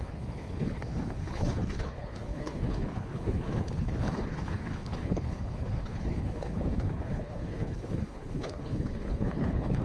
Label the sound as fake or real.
fake